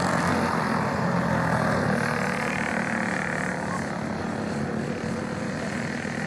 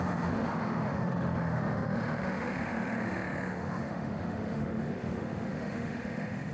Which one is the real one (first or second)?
first